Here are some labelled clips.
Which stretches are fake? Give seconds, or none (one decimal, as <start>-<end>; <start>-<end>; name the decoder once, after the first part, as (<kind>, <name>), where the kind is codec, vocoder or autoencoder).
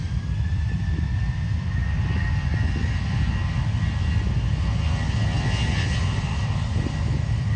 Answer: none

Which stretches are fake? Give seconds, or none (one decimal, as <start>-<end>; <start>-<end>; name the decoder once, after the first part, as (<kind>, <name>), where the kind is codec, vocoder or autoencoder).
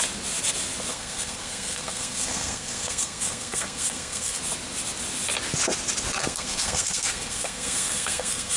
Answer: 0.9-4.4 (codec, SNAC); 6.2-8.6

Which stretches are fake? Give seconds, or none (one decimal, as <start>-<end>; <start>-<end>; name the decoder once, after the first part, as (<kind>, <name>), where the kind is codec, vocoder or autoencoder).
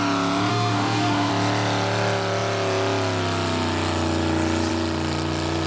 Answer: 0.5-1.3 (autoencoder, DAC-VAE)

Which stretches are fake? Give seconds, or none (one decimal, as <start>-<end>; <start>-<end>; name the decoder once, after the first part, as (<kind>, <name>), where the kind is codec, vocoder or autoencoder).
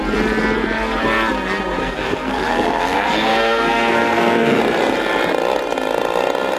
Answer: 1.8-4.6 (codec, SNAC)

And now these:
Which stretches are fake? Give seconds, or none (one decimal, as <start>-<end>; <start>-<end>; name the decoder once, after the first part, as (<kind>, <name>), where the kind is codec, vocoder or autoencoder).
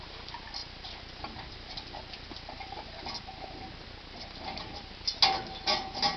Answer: none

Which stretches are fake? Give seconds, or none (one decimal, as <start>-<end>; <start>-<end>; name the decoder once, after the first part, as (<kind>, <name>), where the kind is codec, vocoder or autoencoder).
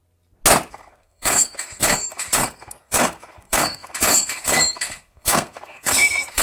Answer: 0.7-6.4 (codec, SNAC)